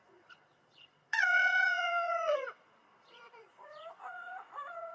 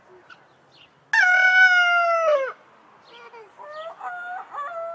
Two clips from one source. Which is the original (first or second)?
second